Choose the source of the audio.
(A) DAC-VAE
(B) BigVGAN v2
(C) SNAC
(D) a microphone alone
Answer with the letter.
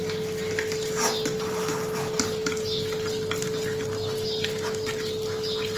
D